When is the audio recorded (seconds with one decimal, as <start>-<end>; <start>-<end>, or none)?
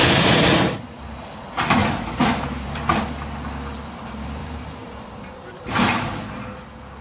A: 0.0-1.8; 3.0-4.4; 6.0-7.0